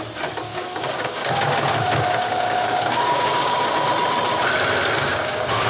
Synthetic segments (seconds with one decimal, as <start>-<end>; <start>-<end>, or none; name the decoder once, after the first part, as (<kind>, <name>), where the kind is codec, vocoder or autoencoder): 0.5-3.9 (codec, DAC); 5.0-5.7

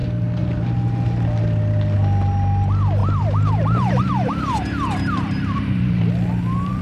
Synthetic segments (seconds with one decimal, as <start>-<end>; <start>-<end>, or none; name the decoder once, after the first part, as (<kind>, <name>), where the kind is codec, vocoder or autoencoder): 3.0-6.1 (vocoder, BigVGAN v2)

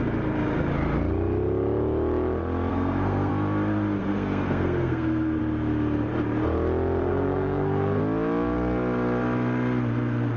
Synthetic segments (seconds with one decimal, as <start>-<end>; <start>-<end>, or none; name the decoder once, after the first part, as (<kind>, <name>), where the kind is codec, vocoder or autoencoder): 2.7-3.3 (codec, SNAC); 4.0-5.4; 7.0-8.0

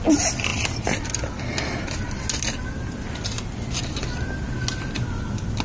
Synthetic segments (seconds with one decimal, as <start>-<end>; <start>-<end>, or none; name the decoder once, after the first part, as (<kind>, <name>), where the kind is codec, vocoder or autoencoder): none

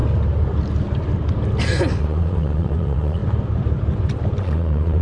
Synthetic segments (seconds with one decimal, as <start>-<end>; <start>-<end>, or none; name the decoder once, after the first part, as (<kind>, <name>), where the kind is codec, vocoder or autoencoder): 2.0-3.2 (vocoder, Vocos); 4.4-5.0

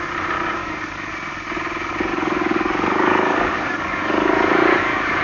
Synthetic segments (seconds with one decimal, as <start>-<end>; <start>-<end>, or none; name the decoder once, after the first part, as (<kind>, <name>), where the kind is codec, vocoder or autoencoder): 0.6-1.1 (codec, DAC); 2.1-5.2

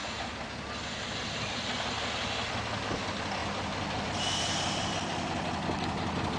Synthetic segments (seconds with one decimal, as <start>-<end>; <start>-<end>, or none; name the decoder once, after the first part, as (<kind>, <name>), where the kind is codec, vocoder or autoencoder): none